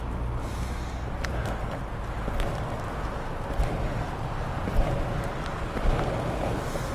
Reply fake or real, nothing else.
real